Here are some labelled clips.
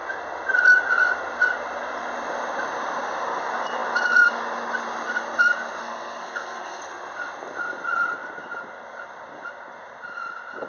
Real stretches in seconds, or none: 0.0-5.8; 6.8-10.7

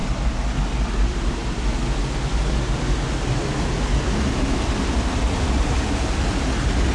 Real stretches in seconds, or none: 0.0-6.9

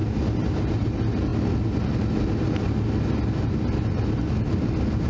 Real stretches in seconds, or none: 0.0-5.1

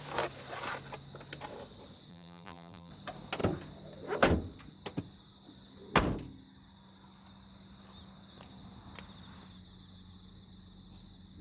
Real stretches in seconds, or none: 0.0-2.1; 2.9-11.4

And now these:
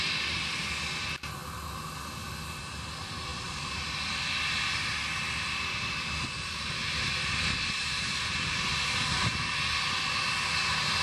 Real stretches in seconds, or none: 0.0-11.0

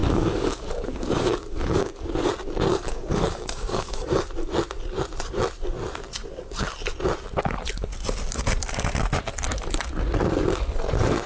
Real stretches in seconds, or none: 2.3-2.7; 4.3-11.3

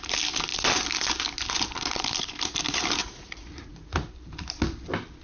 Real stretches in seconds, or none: 0.0-3.0; 4.1-5.2

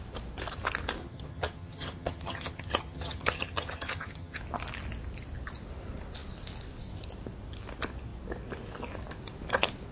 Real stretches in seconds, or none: 0.0-1.0; 4.4-9.9